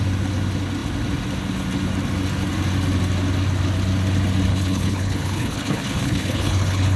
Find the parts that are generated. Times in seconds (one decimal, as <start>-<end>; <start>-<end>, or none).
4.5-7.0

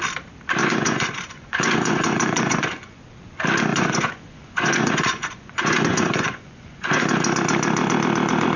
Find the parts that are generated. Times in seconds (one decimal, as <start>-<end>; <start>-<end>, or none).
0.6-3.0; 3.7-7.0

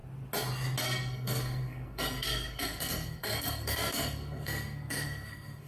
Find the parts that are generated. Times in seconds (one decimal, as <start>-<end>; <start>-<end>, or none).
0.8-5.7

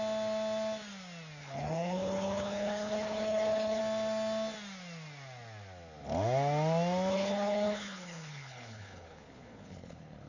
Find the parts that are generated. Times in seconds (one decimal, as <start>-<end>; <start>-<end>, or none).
1.4-3.8; 7.1-10.3

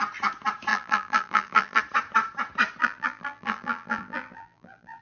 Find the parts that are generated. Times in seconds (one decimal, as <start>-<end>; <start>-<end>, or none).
0.7-1.8; 2.8-5.0